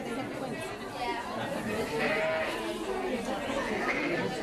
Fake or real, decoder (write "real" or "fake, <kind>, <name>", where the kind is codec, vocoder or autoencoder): real